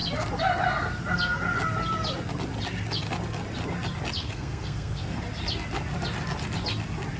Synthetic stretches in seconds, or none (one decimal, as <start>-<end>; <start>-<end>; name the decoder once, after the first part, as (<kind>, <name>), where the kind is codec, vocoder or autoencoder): 4.2-5.2 (codec, SNAC)